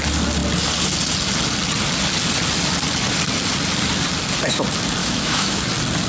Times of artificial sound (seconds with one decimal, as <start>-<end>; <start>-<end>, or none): 5.0-5.6

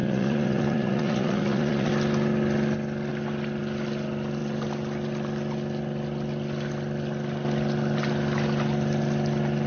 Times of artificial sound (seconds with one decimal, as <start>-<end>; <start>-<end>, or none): 0.0-1.9

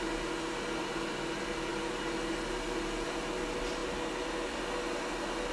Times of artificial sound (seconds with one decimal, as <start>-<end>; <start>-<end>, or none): none